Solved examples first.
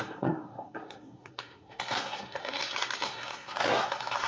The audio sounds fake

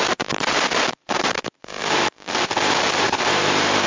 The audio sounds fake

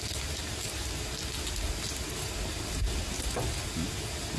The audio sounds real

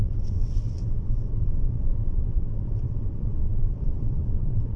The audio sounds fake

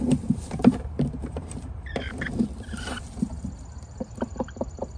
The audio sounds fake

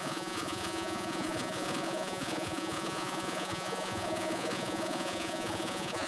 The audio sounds fake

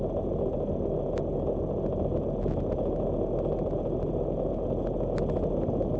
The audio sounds real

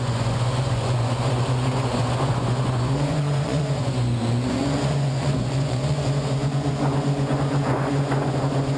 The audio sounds fake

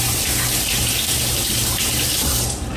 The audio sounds fake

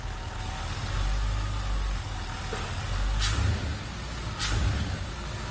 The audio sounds real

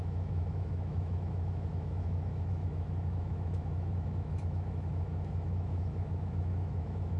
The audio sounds fake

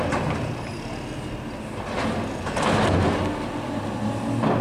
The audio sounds real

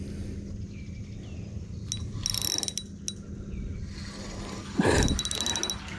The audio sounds real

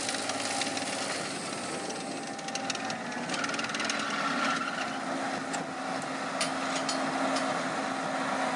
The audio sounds real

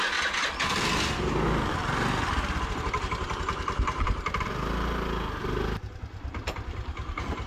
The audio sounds real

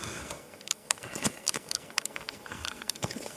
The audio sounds fake